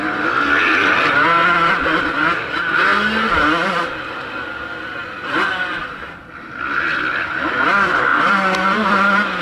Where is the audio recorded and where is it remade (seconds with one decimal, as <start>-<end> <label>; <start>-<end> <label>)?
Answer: 0.0-9.4 recorded